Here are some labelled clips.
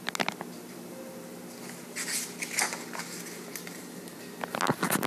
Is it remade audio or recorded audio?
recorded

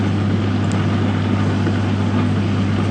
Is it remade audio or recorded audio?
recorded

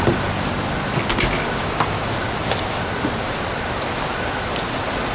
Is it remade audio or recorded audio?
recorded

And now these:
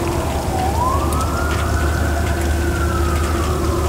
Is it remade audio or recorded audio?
recorded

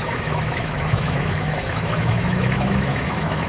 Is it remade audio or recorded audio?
remade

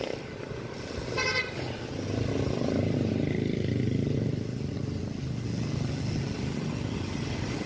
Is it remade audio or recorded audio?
recorded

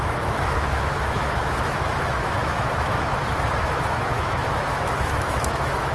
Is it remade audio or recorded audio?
remade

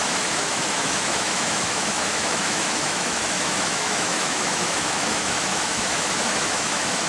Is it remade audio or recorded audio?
remade